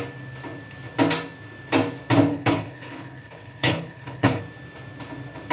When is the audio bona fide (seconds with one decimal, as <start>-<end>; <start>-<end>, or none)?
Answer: 0.0-2.3; 4.4-5.5